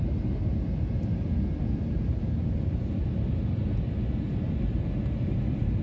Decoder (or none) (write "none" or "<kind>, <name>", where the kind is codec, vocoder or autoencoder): none